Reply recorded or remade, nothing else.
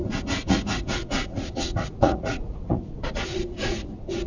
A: remade